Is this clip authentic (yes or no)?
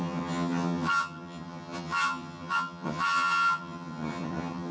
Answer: no